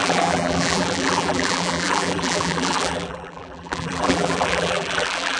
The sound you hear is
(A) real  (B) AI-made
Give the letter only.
B